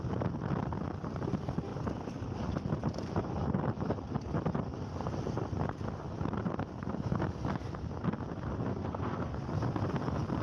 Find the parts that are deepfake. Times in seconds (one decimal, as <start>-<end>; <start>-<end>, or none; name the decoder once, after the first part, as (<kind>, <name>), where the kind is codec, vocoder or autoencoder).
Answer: 8.7-9.3 (codec, SNAC)